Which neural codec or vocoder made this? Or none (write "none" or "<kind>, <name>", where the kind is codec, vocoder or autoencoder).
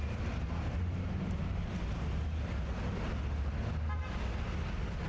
none